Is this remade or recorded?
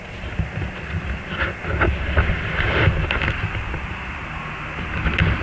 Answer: recorded